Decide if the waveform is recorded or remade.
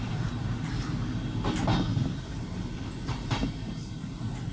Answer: recorded